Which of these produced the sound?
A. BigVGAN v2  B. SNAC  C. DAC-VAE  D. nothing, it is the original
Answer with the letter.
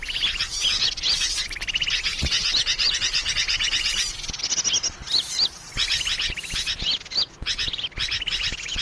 D